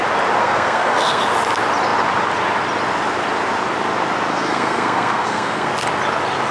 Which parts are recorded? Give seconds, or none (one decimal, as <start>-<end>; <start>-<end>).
0.0-0.4; 1.2-4.3; 5.7-6.5